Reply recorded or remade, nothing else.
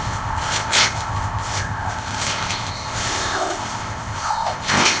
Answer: remade